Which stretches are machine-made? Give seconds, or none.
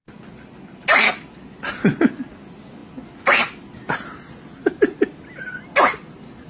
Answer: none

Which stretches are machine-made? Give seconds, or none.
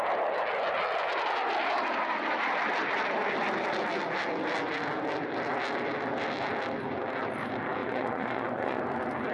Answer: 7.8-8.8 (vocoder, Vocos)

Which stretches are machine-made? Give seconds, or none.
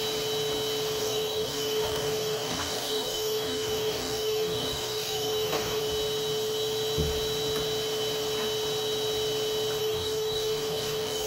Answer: 1.0-5.8 (codec, DAC); 9.8-11.3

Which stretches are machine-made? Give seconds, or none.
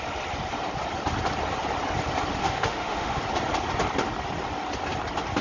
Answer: 2.4-3.2 (autoencoder, DAC-VAE)